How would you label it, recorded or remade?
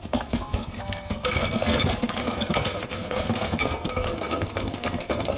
remade